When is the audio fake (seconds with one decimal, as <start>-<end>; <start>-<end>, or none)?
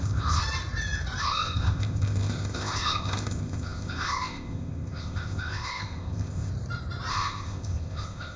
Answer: 0.0-0.4; 1.2-6.5; 7.1-8.4